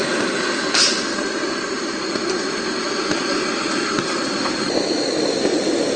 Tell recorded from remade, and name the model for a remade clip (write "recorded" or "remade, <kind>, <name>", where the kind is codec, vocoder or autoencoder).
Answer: recorded